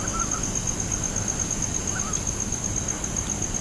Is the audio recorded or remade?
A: recorded